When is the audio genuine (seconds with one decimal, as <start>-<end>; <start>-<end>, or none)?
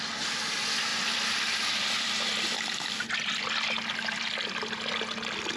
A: 0.0-0.9; 3.5-5.6